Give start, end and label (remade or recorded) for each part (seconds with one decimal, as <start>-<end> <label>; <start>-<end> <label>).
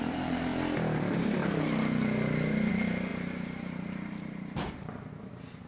0.0-0.5 remade; 0.5-2.7 recorded; 2.7-5.7 remade